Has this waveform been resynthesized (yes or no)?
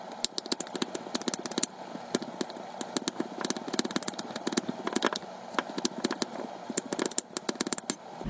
no